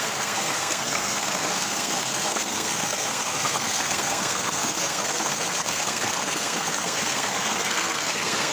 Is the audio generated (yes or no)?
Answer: yes